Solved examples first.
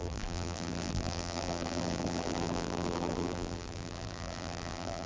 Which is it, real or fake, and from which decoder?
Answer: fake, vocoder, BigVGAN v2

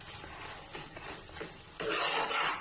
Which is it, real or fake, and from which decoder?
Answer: real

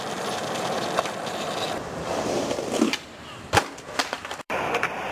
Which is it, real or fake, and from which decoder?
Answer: fake, vocoder, BigVGAN v2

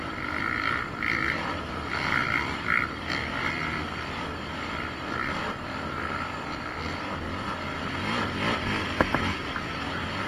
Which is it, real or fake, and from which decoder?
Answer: fake, vocoder, BigVGAN v2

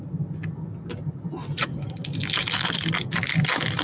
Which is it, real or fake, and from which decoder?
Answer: real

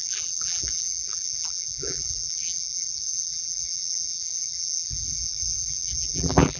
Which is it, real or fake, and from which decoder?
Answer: fake, vocoder, BigVGAN v2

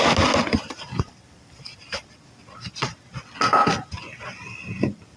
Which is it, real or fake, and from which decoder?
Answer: real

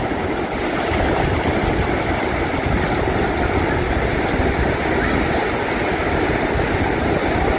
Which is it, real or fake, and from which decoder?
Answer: real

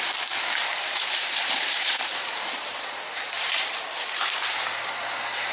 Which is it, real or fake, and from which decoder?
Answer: fake, vocoder, BigVGAN v2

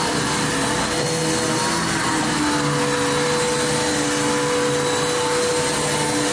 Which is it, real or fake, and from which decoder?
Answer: real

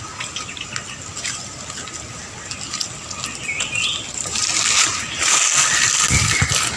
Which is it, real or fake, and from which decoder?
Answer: real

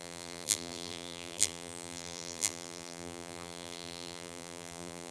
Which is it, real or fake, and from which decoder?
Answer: fake, vocoder, BigVGAN v2